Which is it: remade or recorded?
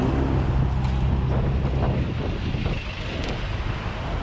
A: recorded